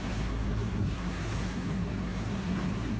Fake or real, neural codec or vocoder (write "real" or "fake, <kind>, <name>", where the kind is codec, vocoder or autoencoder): fake, codec, SNAC